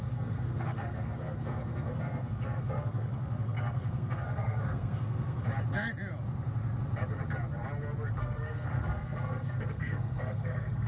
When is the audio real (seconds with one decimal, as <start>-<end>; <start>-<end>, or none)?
5.5-8.2